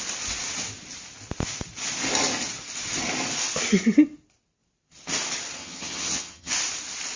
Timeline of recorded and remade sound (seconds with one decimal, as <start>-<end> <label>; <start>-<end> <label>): 0.0-5.6 recorded; 5.6-6.5 remade; 6.5-7.2 recorded